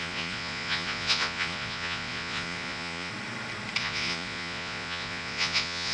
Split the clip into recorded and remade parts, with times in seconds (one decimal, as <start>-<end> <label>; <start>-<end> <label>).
0.0-3.1 remade; 3.1-3.8 recorded; 3.8-5.9 remade